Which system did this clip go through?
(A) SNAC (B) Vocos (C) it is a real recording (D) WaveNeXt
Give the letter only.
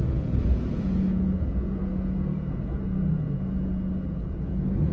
B